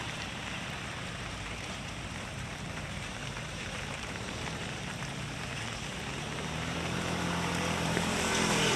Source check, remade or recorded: remade